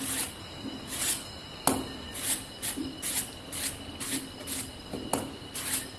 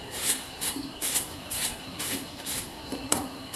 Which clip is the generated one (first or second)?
second